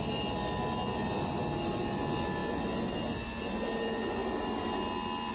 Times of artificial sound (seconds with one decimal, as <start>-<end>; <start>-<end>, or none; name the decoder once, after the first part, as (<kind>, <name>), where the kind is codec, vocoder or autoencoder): none